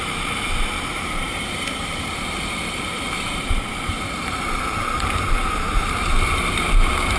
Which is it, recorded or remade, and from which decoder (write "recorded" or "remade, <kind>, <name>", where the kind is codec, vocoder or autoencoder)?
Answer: remade, vocoder, BigVGAN v2